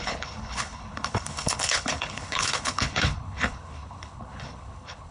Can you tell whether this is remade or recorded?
remade